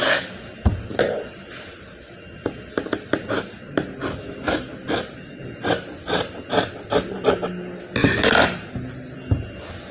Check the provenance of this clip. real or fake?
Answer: real